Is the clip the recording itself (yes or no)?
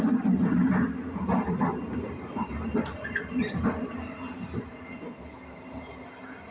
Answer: yes